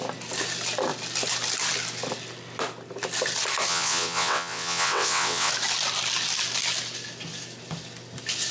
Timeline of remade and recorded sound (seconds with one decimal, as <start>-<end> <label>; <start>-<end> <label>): 0.0-3.7 recorded; 3.7-5.5 remade; 5.5-8.5 recorded